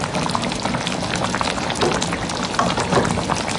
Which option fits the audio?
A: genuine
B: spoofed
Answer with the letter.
B